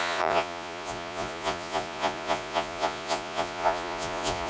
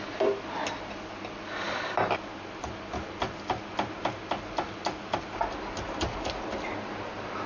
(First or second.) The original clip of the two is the second